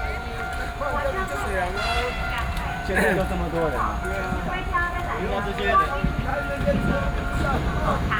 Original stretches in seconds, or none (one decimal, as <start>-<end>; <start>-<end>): 0.0-2.5; 3.1-8.2